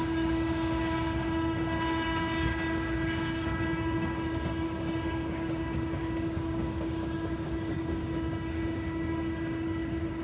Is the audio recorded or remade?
remade